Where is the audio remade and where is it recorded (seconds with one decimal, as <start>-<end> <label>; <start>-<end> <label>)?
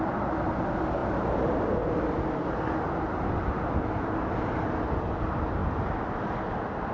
0.0-6.9 recorded